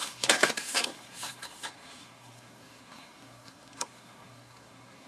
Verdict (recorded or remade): remade